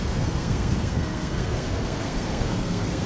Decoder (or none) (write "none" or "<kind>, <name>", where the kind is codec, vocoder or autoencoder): codec, SNAC